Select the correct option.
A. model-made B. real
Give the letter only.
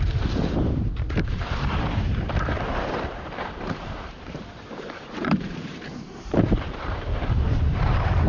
A